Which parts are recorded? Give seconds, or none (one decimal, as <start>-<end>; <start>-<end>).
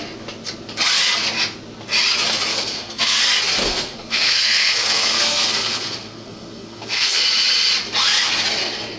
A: 0.0-2.5; 3.2-3.6; 7.2-9.0